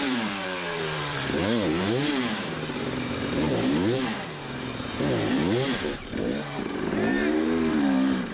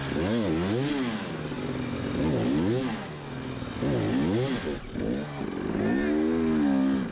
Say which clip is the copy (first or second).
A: first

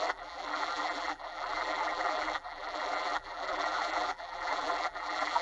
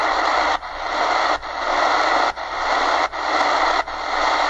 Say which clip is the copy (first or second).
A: first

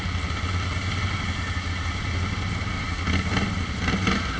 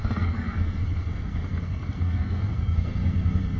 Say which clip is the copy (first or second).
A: second